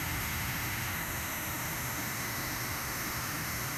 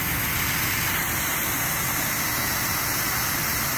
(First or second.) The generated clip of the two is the first